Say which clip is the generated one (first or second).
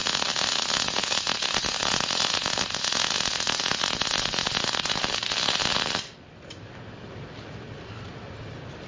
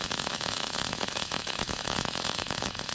second